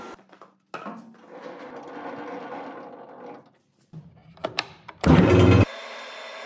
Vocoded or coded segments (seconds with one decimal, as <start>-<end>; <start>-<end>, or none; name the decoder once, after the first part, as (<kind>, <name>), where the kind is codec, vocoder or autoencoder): 4.2-5.2 (vocoder, BigVGAN v2)